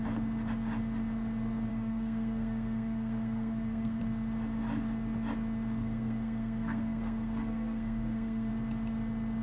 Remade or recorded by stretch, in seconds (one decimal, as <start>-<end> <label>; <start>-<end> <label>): 0.0-1.7 recorded; 1.7-4.0 remade; 4.0-5.8 recorded; 5.8-8.5 remade; 8.5-9.4 recorded